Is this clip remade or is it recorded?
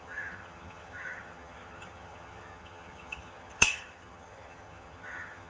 remade